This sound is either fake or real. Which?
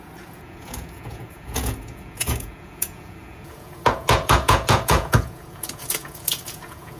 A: fake